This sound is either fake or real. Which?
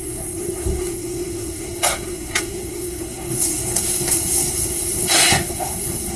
fake